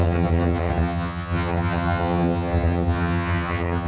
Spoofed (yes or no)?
yes